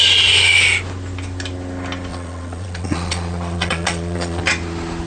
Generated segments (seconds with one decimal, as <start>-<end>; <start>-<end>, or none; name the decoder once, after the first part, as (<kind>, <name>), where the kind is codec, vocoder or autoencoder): 2.1-4.4 (vocoder, Vocos)